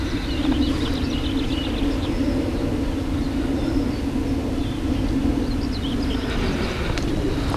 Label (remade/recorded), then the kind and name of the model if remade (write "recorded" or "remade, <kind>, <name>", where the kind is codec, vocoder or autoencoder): recorded